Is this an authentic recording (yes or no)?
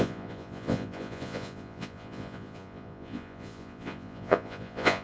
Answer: no